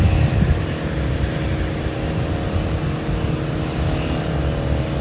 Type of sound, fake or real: real